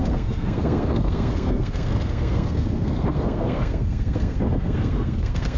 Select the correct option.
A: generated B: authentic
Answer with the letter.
A